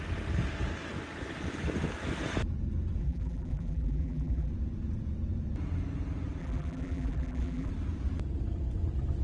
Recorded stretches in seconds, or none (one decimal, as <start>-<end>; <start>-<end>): 0.0-3.0; 4.5-6.4; 7.7-9.2